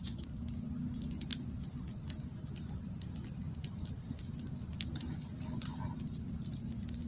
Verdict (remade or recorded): recorded